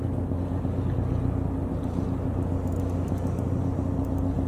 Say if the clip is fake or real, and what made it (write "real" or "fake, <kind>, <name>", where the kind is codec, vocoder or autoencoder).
real